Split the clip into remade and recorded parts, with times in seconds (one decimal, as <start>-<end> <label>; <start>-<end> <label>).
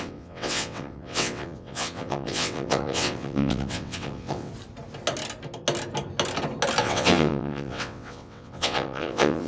0.0-4.5 remade; 4.5-6.8 recorded; 6.8-9.5 remade